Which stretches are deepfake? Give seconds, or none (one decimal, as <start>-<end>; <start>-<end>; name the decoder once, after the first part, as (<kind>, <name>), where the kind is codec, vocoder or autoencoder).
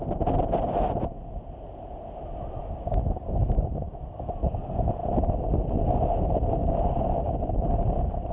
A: 2.6-4.0 (vocoder, BigVGAN v2); 6.6-7.5